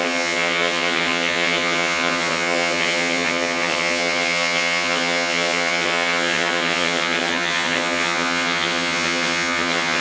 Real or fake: fake